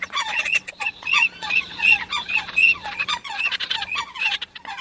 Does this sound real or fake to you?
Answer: fake